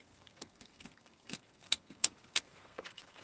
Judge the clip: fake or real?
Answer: fake